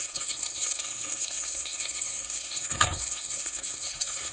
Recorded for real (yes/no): no